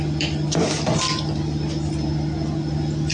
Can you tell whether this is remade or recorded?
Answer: recorded